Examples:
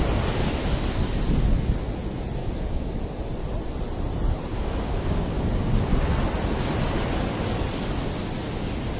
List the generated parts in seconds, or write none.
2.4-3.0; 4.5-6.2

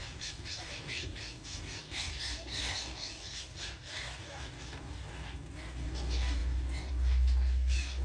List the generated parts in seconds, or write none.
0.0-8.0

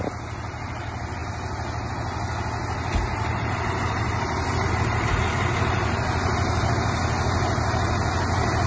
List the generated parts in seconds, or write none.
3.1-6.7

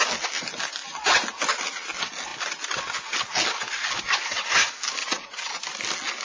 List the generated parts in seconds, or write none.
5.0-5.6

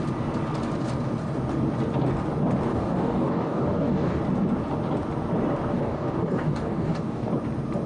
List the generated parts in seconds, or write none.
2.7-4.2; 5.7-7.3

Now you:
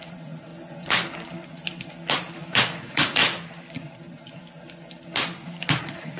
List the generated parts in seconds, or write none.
0.0-0.5; 2.8-3.2; 5.8-6.2